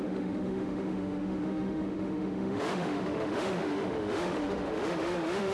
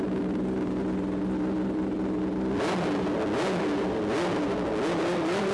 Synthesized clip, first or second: first